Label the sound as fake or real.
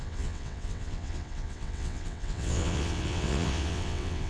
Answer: fake